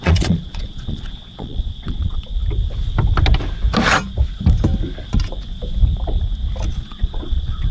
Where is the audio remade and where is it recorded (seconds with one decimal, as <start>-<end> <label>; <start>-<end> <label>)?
0.0-2.3 remade; 2.3-6.7 recorded; 6.7-7.7 remade